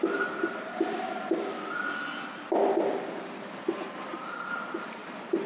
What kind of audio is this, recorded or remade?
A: recorded